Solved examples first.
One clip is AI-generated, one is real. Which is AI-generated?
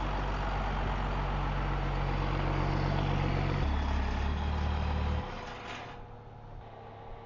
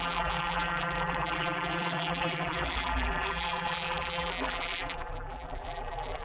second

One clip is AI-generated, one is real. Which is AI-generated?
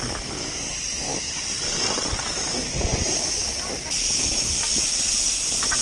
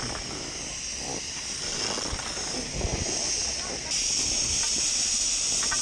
first